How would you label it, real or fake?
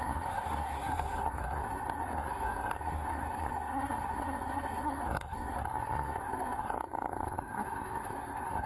fake